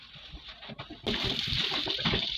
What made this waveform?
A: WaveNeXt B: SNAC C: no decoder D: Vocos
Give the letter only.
C